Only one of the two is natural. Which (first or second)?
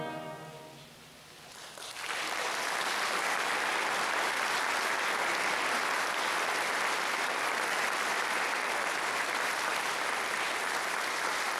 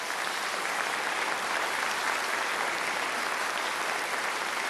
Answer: first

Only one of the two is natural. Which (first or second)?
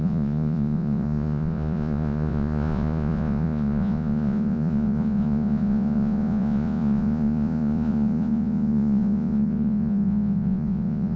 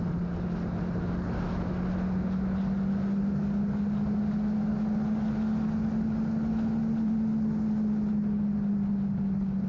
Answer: second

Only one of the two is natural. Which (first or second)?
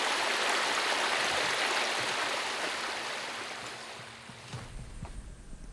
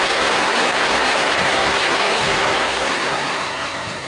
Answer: first